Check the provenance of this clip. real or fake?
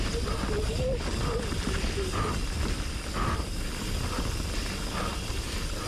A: real